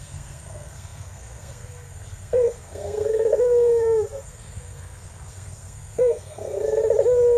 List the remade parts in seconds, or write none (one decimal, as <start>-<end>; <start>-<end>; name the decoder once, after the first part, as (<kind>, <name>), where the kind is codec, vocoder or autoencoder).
0.0-6.8 (codec, SNAC)